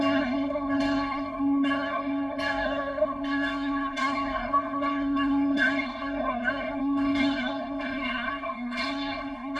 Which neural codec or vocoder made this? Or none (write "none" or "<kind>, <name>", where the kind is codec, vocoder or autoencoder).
codec, SNAC